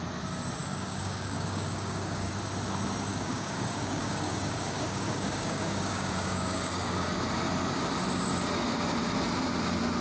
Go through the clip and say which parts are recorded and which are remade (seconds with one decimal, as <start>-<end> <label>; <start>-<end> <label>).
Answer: 0.0-0.6 recorded; 0.6-2.3 remade; 2.3-3.1 recorded; 3.1-7.1 remade; 7.1-10.0 recorded